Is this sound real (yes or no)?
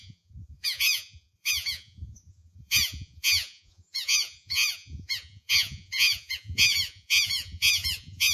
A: no